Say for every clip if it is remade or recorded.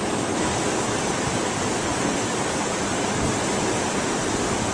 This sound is recorded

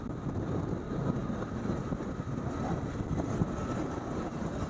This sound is recorded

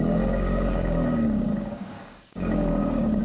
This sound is remade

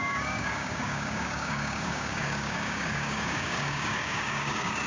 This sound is remade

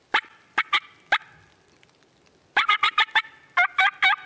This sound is recorded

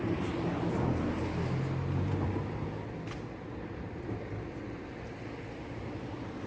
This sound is recorded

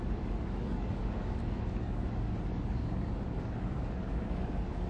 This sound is remade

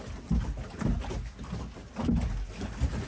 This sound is recorded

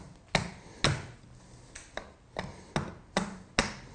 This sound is recorded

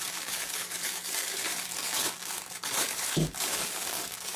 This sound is remade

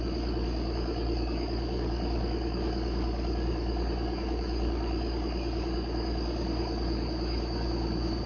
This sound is remade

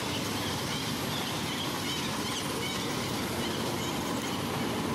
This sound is recorded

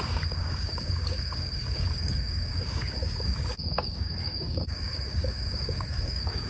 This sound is remade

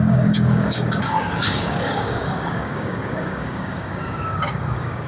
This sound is remade